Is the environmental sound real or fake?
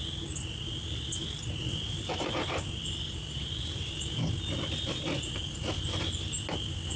real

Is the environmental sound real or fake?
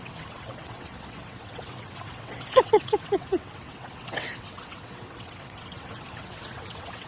fake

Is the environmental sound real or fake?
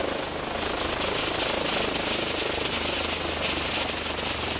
real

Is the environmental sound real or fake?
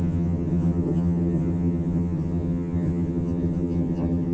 fake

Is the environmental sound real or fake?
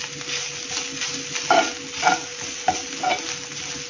real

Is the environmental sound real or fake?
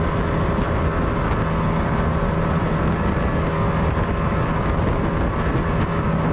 real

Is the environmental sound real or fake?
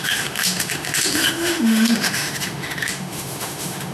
fake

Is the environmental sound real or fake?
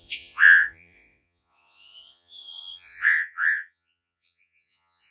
fake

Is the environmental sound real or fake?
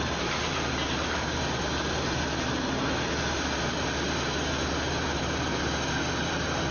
fake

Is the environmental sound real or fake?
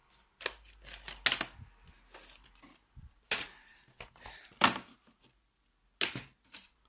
real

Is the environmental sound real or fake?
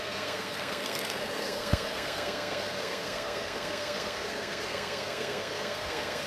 fake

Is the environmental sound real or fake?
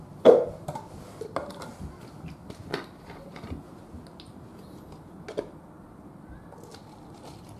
real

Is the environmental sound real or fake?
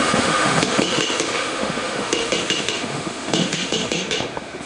fake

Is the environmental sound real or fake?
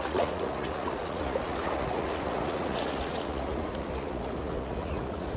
fake